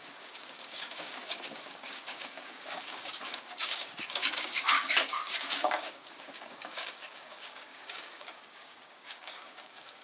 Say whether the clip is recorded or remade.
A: remade